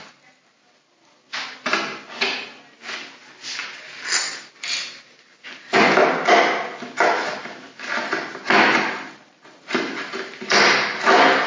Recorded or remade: recorded